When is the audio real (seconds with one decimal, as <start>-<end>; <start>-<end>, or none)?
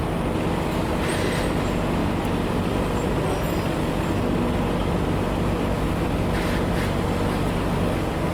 0.0-2.0; 3.2-8.3